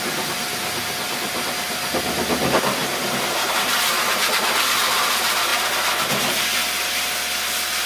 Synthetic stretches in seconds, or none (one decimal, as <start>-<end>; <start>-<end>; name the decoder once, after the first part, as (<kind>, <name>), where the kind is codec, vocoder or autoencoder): none